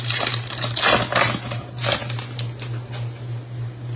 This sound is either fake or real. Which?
real